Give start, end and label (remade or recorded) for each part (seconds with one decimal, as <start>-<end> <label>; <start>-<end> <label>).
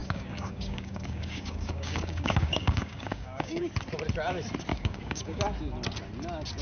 0.0-3.6 remade; 3.6-4.7 recorded; 4.7-5.4 remade; 5.4-6.6 recorded